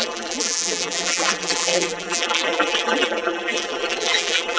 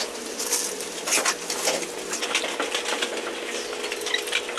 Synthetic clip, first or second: first